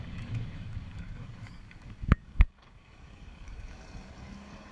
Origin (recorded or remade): remade